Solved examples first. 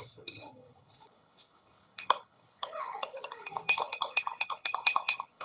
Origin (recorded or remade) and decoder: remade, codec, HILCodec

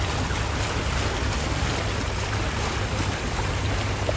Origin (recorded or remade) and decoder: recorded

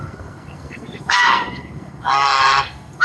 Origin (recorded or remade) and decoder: remade, codec, SNAC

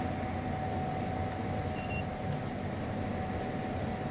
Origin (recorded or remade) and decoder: recorded